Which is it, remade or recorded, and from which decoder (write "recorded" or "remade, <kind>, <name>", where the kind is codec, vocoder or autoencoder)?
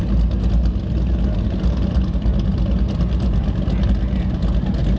recorded